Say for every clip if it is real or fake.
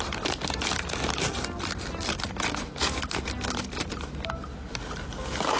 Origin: real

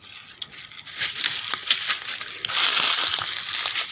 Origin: real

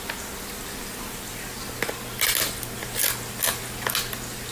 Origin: real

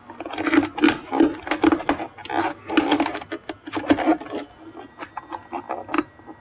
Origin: real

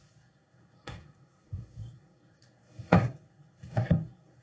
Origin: fake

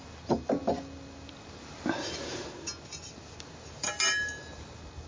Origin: real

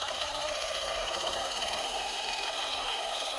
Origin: fake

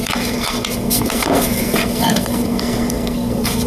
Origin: fake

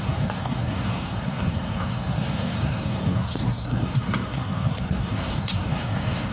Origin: fake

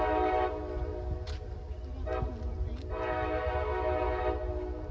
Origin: real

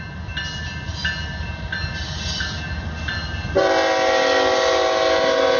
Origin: real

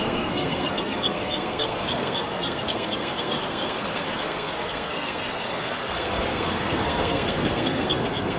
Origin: fake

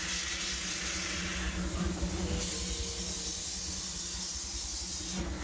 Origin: real